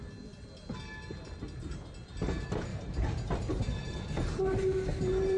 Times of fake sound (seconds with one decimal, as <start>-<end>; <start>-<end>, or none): 2.7-3.6